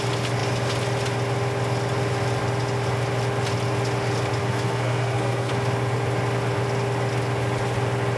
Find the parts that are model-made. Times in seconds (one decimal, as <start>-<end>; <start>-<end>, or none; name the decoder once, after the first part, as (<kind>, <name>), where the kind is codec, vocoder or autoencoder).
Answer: 4.4-5.5 (codec, SNAC)